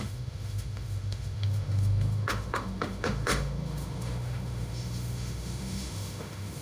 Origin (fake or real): fake